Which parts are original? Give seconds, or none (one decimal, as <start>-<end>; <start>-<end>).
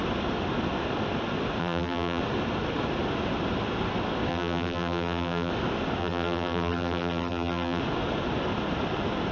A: 0.0-1.6; 2.2-4.3; 5.5-6.0; 7.8-9.3